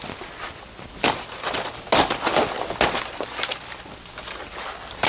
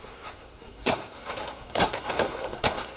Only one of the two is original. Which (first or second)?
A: first